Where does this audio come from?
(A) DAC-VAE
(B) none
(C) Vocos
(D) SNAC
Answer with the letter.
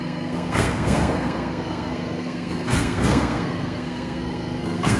D